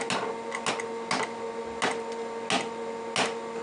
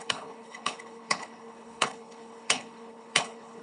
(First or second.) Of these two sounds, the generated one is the second